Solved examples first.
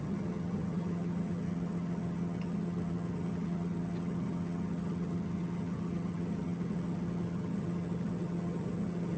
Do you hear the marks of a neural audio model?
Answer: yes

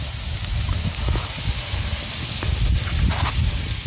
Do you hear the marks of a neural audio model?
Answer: no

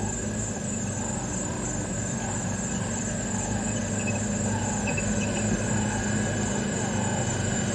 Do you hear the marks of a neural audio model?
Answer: no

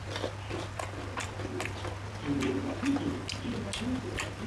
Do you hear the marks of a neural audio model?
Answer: no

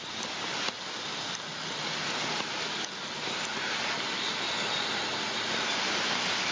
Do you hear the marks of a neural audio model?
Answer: no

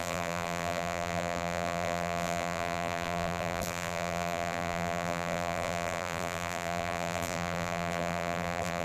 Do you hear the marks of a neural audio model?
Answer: yes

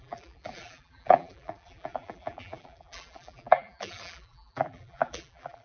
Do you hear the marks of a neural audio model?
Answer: yes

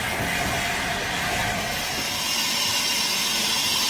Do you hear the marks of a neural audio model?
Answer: no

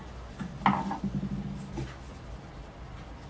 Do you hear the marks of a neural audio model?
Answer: no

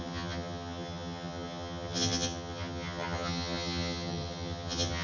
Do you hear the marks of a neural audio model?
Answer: yes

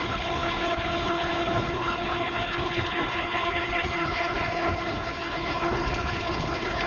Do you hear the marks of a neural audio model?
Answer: yes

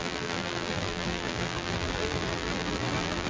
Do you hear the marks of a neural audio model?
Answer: yes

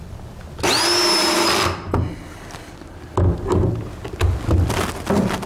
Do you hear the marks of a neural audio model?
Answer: no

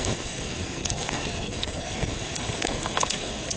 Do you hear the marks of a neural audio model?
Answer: yes